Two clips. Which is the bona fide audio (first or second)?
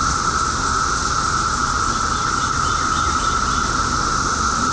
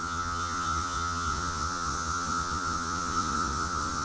first